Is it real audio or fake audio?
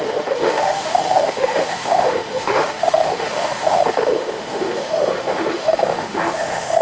fake